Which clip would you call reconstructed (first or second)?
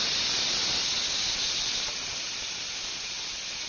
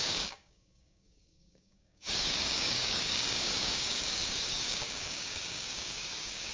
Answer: second